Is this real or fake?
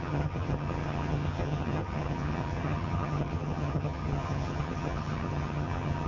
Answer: fake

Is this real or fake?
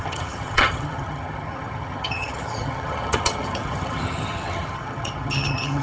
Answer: fake